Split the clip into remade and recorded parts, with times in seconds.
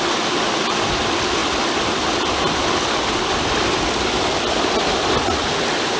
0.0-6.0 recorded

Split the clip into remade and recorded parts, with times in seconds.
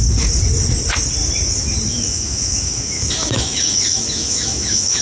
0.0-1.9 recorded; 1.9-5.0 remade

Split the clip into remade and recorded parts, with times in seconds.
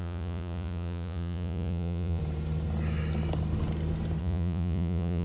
0.0-2.2 remade; 2.2-4.2 recorded; 4.2-5.2 remade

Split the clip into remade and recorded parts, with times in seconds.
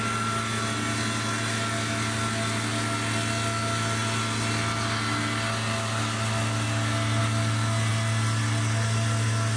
0.0-9.6 recorded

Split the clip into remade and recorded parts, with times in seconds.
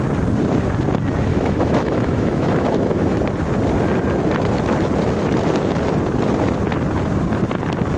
0.0-1.3 recorded; 1.3-3.2 remade; 3.2-8.0 recorded